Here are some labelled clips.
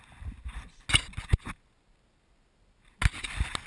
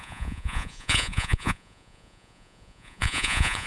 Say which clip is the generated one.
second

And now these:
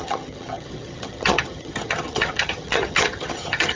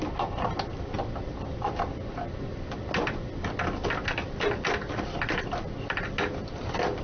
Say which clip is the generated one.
first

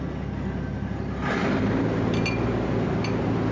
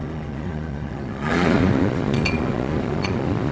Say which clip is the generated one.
second